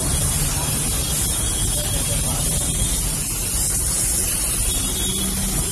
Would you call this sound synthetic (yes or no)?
no